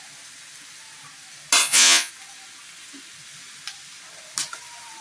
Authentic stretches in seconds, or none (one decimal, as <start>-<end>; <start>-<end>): 0.0-1.6; 2.1-5.0